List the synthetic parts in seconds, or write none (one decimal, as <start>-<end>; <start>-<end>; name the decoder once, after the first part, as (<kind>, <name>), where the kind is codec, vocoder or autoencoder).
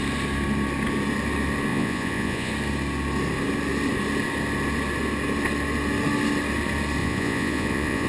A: 1.7-2.5 (vocoder, Vocos); 7.0-8.1